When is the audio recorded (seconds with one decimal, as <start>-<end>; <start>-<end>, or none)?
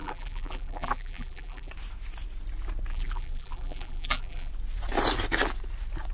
1.7-2.9; 4.5-6.1